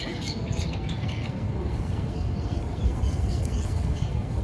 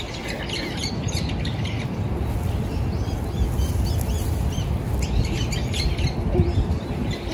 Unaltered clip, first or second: second